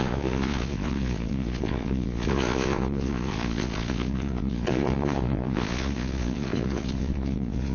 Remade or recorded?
remade